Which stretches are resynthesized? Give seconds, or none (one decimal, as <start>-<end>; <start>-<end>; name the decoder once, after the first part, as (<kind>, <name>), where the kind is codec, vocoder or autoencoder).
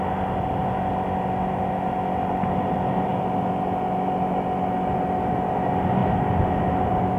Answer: none